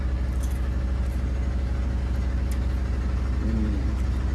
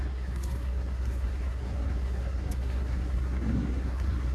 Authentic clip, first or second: first